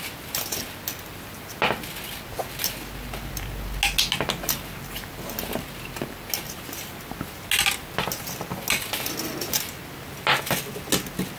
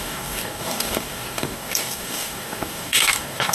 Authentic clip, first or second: first